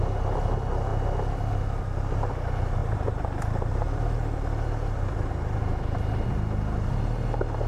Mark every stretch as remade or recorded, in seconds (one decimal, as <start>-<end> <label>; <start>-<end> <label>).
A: 0.0-7.7 recorded